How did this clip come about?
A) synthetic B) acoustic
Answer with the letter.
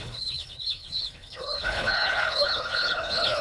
A